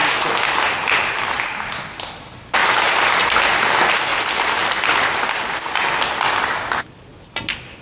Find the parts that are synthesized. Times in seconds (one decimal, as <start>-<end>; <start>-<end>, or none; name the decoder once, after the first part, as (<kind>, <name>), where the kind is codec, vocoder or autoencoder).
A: 2.6-3.4 (vocoder, BigVGAN v2)